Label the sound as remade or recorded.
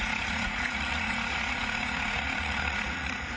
remade